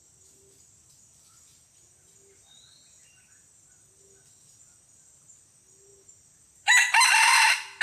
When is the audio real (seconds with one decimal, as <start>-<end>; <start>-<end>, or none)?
0.0-7.8